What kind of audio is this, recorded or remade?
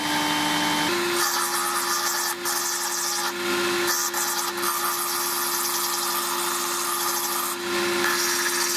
recorded